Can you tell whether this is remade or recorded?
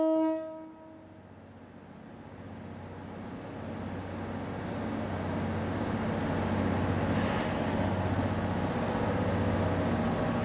recorded